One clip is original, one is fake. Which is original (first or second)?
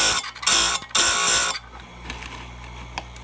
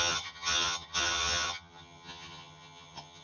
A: first